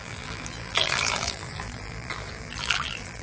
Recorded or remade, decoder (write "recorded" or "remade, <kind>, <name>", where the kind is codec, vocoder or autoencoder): remade, vocoder, BigVGAN v2